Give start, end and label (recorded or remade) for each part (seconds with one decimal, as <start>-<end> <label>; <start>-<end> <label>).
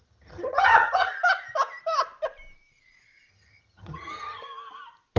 0.0-1.1 remade; 1.1-3.3 recorded; 3.3-4.4 remade; 4.4-5.2 recorded